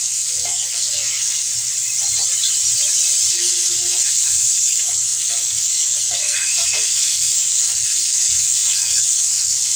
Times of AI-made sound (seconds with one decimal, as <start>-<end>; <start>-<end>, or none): 0.0-1.5; 3.3-9.8